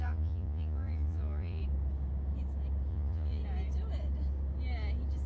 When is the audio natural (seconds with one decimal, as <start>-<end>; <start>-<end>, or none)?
1.6-2.9; 3.4-5.3